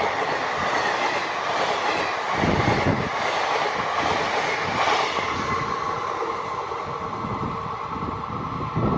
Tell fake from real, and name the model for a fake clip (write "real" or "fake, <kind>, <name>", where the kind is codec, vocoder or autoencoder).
real